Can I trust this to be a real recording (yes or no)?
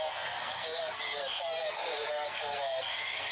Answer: no